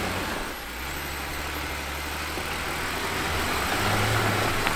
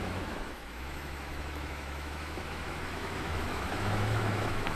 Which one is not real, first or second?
second